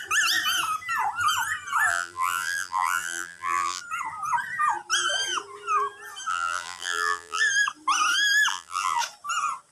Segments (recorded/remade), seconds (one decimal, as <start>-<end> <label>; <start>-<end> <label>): 0.0-1.9 recorded; 1.9-3.8 remade; 3.8-6.3 recorded; 6.3-7.4 remade; 7.4-8.5 recorded; 8.5-9.0 remade; 9.0-9.7 recorded